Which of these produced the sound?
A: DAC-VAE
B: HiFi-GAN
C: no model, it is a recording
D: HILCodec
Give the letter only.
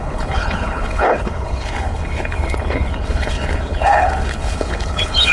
D